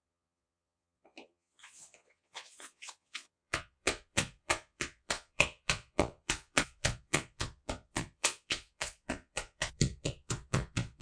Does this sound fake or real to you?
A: fake